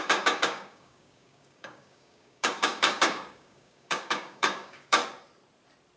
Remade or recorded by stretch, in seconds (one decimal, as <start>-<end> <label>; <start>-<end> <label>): 0.0-5.0 remade; 5.0-6.0 recorded

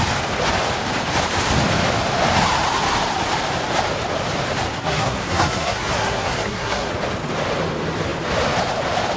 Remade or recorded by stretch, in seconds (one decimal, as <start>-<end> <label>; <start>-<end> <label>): 0.0-4.7 recorded; 4.7-6.9 remade; 6.9-9.2 recorded